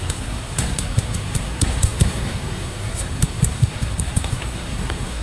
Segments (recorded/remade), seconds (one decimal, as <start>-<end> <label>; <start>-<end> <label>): 0.0-5.2 remade